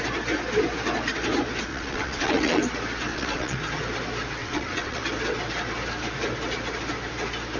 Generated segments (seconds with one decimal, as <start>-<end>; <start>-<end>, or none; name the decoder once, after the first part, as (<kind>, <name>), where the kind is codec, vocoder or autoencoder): 1.7-2.6 (vocoder, WaveNeXt); 3.1-3.6; 4.4-5.0

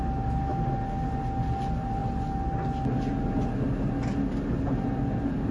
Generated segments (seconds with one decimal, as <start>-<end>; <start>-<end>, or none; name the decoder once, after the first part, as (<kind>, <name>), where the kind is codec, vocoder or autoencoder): none

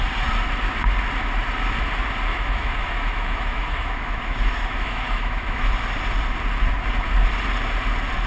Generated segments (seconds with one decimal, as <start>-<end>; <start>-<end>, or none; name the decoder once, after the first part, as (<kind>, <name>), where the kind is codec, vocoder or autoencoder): 2.3-5.7 (autoencoder, DAC-VAE)

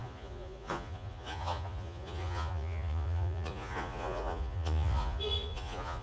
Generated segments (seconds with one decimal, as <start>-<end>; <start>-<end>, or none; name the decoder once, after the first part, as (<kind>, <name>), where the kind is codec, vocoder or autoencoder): 0.0-6.0 (vocoder, Vocos)

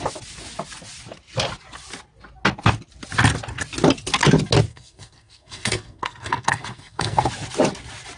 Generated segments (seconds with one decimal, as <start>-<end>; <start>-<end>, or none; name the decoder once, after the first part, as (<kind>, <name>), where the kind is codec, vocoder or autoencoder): 4.7-7.3 (codec, SNAC)